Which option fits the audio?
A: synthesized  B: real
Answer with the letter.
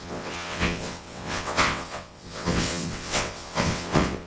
A